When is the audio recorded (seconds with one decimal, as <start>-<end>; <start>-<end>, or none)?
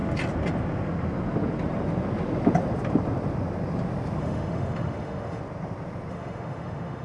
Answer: 0.0-4.2; 5.4-6.1